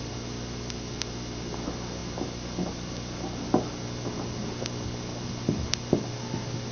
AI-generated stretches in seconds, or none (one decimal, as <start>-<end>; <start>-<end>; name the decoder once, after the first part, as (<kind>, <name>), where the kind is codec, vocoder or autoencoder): none